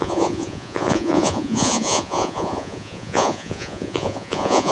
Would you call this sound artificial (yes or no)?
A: yes